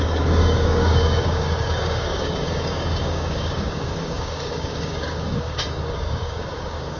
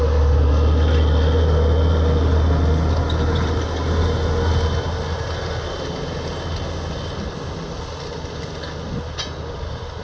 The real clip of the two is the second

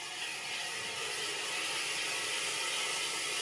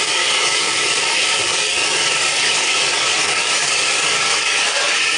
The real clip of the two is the first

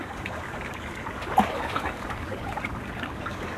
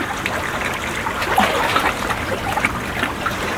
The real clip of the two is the second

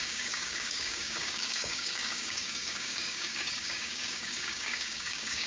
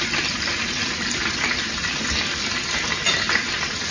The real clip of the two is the second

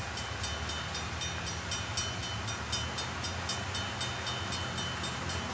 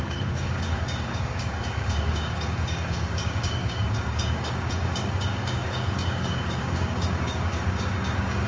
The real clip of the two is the first